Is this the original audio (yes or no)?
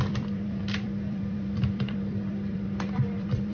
no